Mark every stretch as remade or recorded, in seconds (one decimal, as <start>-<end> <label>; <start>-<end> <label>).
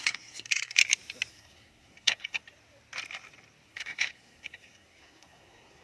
0.0-0.8 remade; 0.8-1.3 recorded; 1.3-2.4 remade; 2.4-3.7 recorded; 3.7-5.8 remade